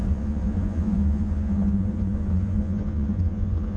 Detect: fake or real fake